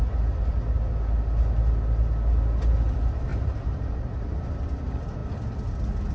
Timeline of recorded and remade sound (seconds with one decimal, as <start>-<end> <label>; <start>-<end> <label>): 0.0-3.3 recorded; 3.3-4.5 remade; 4.5-6.1 recorded